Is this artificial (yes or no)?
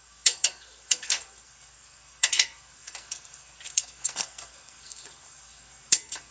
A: yes